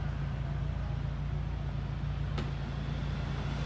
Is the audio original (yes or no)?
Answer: yes